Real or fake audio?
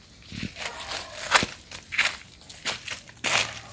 real